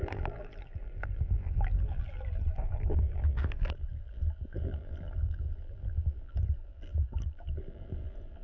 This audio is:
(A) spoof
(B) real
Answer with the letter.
A